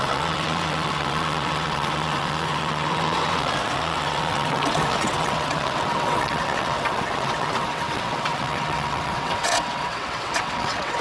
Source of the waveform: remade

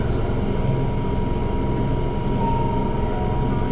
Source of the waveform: recorded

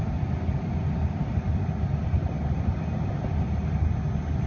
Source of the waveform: recorded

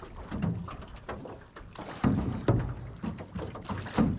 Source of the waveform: recorded